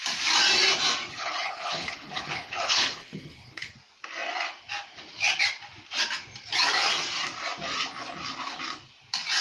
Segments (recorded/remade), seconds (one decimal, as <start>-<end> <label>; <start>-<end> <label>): 0.0-1.1 recorded; 1.1-3.7 remade; 3.7-9.4 recorded